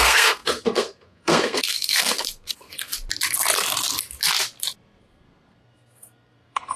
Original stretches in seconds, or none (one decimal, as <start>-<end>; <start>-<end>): 2.9-5.0